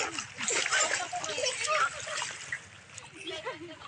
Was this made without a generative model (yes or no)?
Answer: yes